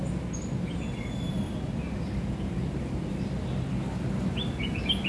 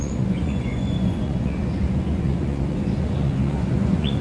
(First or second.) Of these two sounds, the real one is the first